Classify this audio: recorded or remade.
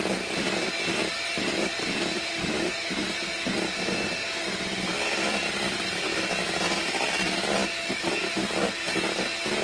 recorded